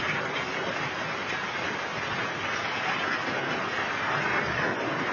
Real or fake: real